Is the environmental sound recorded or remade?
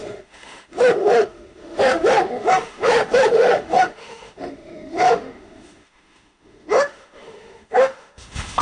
remade